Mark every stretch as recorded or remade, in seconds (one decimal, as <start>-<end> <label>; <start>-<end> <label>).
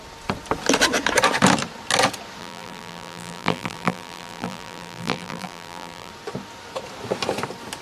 0.0-2.4 recorded; 2.4-6.1 remade; 6.1-7.8 recorded